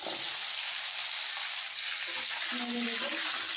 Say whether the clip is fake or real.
real